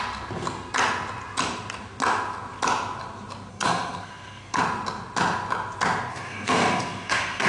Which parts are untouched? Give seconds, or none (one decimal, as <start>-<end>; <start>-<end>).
0.0-3.5; 4.6-6.1